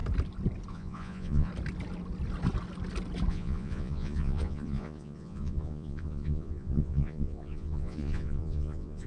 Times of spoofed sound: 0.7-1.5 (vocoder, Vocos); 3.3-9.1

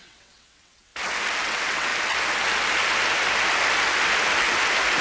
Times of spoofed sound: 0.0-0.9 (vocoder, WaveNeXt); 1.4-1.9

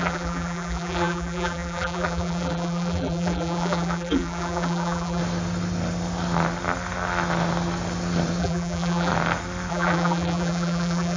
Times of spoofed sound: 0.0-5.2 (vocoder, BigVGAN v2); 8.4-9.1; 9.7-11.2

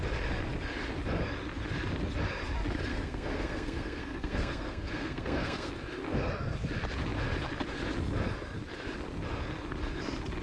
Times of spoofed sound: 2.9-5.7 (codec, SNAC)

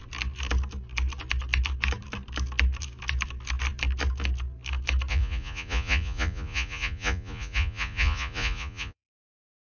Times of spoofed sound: 5.1-9.1 (vocoder, Vocos)

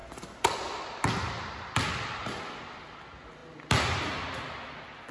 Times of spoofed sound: none

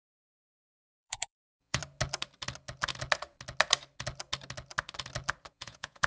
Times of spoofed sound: 0.0-1.8 (vocoder, Vocos); 5.5-6.1

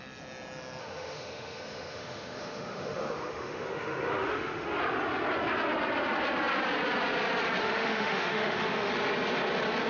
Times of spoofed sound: 0.8-4.8 (autoencoder, DAC-VAE); 7.6-8.9